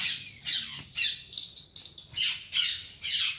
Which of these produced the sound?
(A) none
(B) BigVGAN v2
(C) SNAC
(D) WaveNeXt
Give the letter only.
B